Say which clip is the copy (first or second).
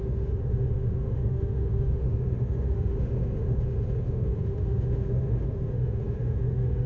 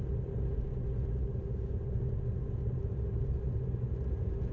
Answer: first